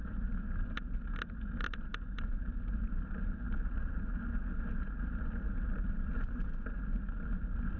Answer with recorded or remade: recorded